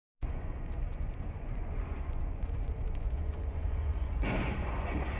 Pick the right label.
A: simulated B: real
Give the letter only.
A